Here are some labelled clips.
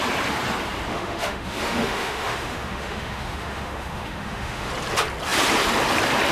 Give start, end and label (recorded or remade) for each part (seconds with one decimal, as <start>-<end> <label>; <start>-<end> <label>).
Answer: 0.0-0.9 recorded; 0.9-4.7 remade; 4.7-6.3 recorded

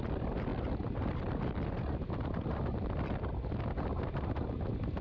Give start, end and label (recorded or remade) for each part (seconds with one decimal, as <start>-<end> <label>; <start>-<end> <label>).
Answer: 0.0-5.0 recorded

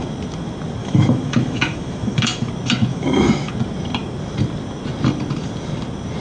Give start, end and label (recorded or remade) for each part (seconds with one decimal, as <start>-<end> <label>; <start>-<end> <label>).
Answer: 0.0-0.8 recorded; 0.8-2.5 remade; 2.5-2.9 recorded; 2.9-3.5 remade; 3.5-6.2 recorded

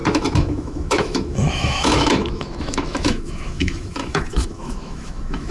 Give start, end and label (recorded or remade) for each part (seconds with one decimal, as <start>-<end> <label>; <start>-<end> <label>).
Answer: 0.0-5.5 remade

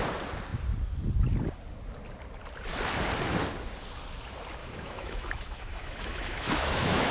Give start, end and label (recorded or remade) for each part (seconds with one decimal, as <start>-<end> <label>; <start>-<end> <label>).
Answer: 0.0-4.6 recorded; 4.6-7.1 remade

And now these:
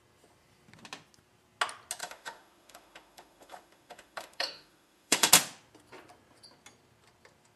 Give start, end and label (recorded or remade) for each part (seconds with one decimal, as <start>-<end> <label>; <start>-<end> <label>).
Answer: 0.0-2.0 recorded; 2.0-5.3 remade; 5.3-7.6 recorded

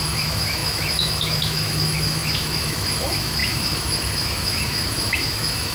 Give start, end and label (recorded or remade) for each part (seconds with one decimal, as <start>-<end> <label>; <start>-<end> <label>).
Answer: 0.0-5.7 remade